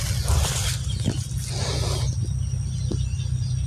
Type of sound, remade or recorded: recorded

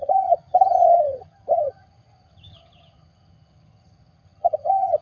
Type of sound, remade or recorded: remade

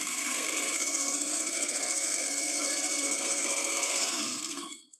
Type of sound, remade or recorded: remade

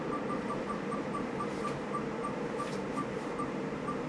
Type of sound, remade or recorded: remade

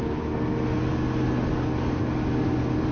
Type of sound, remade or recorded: recorded